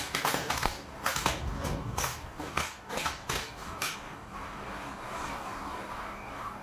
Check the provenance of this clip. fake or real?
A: fake